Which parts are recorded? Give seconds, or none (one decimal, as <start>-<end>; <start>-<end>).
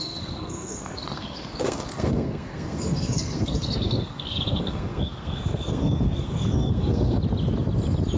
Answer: 7.2-8.2